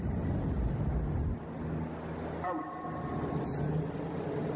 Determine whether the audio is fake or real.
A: real